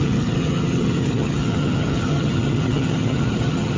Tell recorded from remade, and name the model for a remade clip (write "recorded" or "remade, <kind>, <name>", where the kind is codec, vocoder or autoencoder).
remade, vocoder, HiFi-GAN